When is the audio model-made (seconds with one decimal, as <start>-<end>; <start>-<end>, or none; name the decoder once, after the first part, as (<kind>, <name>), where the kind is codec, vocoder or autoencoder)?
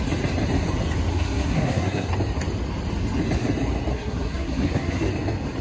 1.1-2.1 (codec, SNAC); 3.9-5.1